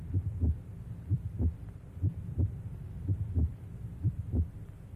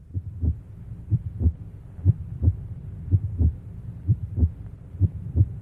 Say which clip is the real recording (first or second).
first